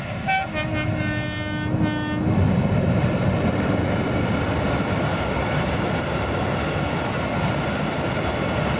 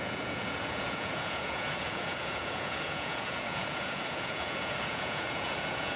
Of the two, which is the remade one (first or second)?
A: second